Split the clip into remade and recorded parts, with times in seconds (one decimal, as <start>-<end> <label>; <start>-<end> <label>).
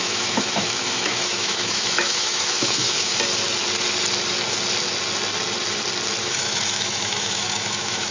0.0-3.1 remade; 3.1-6.2 recorded; 6.2-8.1 remade